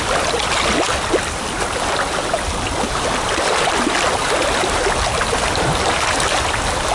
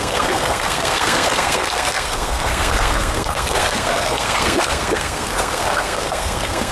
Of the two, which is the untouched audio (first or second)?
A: first